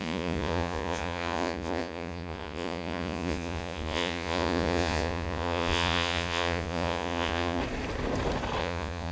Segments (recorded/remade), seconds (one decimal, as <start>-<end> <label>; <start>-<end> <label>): 0.0-7.6 remade; 7.6-8.6 recorded; 8.6-9.1 remade